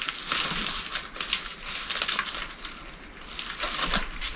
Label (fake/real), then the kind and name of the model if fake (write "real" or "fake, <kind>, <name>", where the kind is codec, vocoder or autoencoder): real